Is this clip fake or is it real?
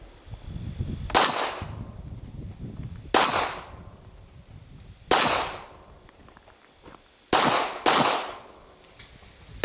real